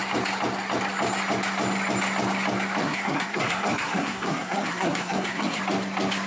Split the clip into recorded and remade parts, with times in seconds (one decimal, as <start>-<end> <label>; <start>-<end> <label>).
0.0-2.8 recorded; 2.8-5.6 remade; 5.6-6.3 recorded